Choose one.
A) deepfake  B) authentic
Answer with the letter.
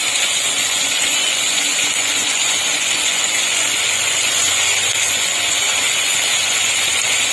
A